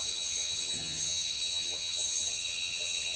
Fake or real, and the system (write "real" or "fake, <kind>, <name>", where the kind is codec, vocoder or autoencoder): fake, vocoder, HiFi-GAN